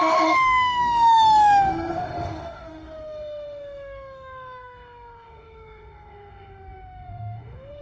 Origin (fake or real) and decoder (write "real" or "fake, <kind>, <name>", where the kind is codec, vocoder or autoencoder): fake, autoencoder, DAC-VAE